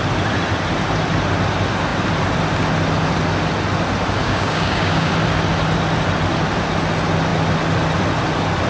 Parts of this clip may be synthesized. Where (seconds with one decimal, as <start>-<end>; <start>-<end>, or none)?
4.2-5.1